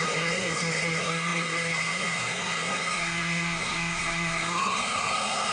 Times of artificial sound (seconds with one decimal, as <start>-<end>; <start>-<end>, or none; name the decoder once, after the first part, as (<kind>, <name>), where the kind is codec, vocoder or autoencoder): 0.0-5.5 (codec, SNAC)